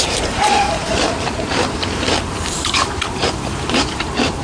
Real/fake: fake